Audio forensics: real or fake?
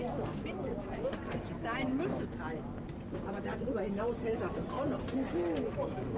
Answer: real